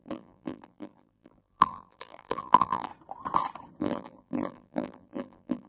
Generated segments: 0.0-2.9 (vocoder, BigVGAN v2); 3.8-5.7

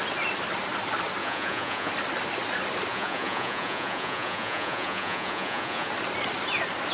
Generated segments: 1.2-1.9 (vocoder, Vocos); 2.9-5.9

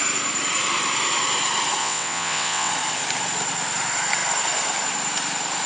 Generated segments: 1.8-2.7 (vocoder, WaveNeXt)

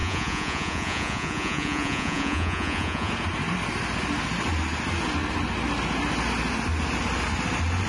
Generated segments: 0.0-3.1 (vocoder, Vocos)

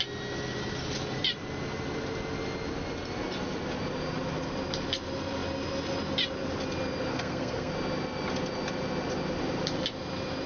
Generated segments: 7.1-7.7 (codec, SNAC)